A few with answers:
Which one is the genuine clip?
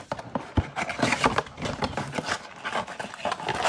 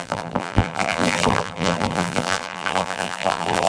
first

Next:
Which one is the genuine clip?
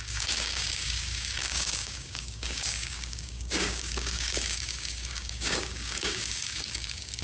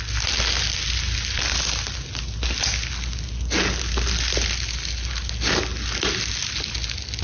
second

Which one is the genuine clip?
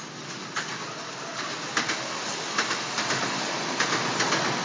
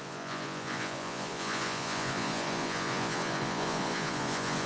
first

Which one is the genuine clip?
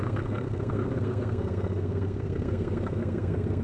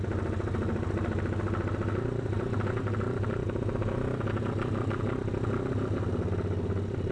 second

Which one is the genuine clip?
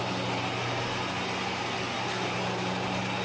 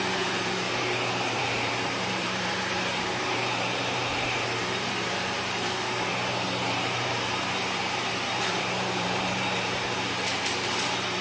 first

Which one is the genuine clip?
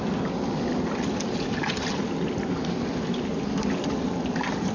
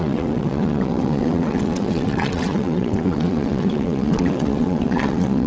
first